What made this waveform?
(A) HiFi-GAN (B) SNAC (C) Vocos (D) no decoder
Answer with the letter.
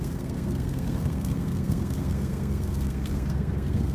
B